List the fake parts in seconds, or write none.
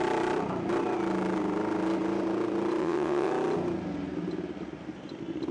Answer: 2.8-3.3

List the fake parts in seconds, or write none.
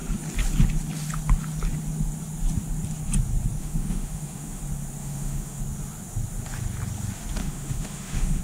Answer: 3.6-4.6; 5.0-5.6; 7.4-8.4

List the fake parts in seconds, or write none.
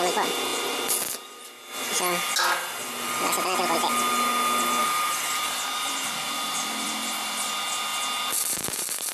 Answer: 4.8-7.5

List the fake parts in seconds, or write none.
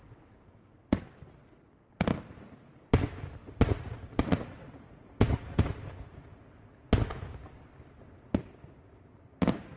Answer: 3.4-5.7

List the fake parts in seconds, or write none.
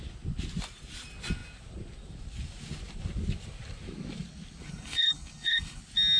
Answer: 4.6-5.8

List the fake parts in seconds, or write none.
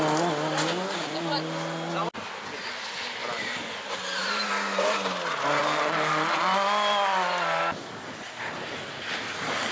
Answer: 3.2-4.5; 5.6-6.4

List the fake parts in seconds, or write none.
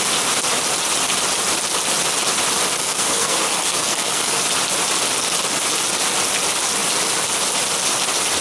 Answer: 2.8-4.4